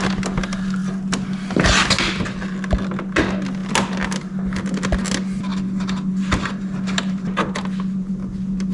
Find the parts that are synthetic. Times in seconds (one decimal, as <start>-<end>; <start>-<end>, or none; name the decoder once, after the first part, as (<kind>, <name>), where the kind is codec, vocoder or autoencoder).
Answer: none